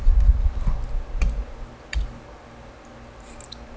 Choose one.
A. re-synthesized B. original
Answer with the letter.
B